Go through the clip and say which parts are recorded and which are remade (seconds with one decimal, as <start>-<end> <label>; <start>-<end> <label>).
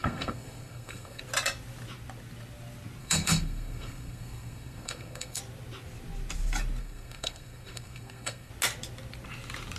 0.0-1.2 remade; 1.2-3.0 recorded; 3.0-5.4 remade; 5.4-6.8 recorded; 6.8-8.5 remade; 8.5-9.8 recorded